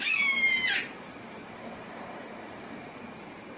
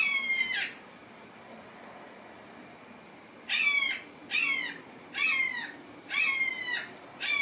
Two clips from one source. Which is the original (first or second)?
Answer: second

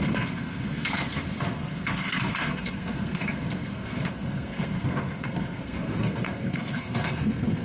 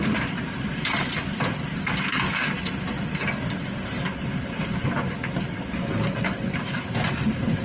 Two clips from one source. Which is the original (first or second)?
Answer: second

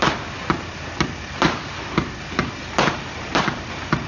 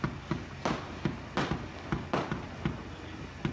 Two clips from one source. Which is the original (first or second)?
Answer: second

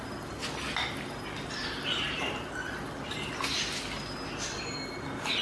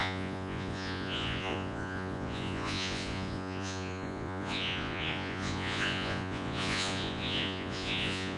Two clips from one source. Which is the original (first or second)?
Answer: first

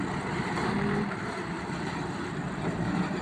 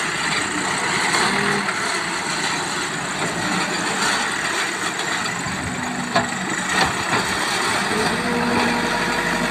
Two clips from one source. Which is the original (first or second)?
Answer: second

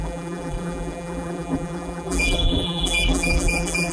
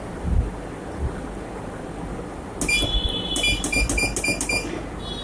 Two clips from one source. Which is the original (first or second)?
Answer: second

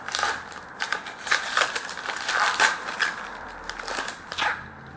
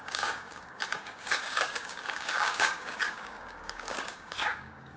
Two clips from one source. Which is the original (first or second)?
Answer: first